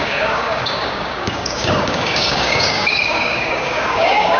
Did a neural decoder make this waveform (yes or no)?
yes